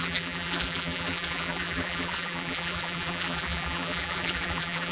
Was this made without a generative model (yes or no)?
no